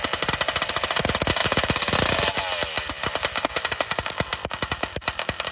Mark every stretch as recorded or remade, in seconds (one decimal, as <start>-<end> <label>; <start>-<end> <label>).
0.0-5.5 recorded